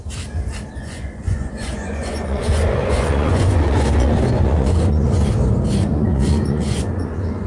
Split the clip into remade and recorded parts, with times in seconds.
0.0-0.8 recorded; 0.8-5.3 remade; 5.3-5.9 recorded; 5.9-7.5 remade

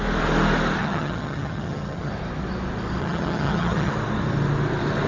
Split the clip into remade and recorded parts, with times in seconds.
0.0-0.8 recorded; 0.8-2.1 remade; 2.1-3.0 recorded; 3.0-3.9 remade; 3.9-5.1 recorded

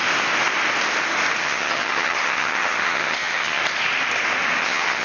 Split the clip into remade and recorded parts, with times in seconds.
0.0-1.4 recorded; 1.4-3.6 remade; 3.6-4.6 recorded; 4.6-5.0 remade

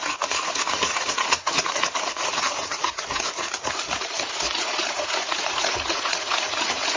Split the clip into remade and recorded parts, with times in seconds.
0.0-7.0 remade

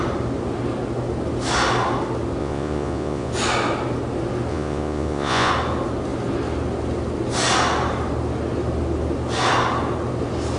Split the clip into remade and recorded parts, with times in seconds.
0.0-2.4 recorded; 2.4-3.3 remade; 3.3-4.5 recorded; 4.5-5.5 remade; 5.5-10.6 recorded

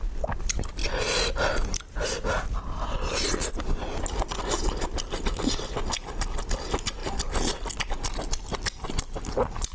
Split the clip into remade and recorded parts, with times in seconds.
0.0-0.8 recorded; 0.8-1.5 remade; 1.5-7.0 recorded; 7.0-7.9 remade; 7.9-9.7 recorded

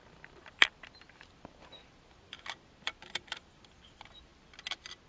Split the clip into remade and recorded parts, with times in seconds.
0.0-4.3 remade; 4.3-5.1 recorded

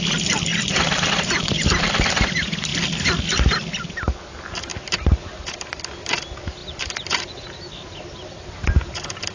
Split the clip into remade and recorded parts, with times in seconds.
0.0-9.3 recorded